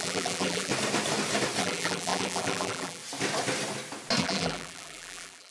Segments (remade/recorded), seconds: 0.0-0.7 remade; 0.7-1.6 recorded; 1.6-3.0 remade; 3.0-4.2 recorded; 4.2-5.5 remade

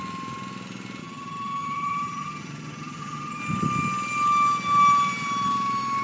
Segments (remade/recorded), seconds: 0.0-1.0 recorded; 1.0-3.4 remade; 3.4-6.0 recorded

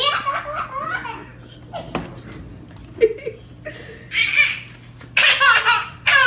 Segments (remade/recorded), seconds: 0.0-6.3 recorded

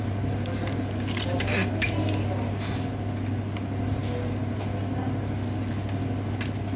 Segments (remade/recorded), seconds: 0.0-6.8 recorded

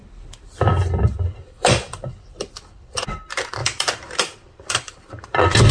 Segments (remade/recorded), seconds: 0.0-5.7 remade

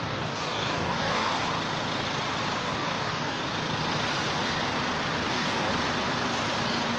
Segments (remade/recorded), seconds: 0.0-1.3 remade; 1.3-2.6 recorded; 2.6-3.4 remade; 3.4-5.3 recorded; 5.3-5.7 remade; 5.7-7.0 recorded

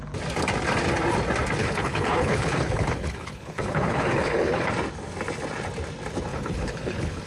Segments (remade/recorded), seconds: 0.0-1.6 recorded; 1.6-4.7 remade; 4.7-6.3 recorded; 6.3-7.3 remade